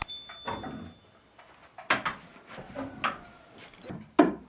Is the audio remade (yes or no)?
no